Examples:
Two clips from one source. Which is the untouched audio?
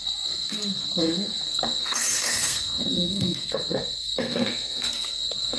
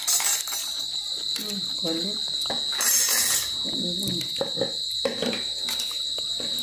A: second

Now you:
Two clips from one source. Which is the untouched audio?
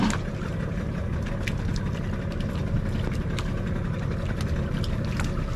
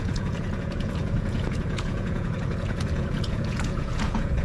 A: first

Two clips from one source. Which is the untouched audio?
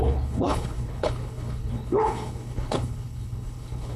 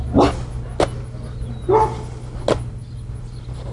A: second